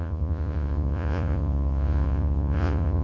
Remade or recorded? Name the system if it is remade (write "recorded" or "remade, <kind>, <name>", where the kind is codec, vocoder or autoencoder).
remade, vocoder, Vocos